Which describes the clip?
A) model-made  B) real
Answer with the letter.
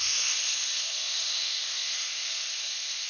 A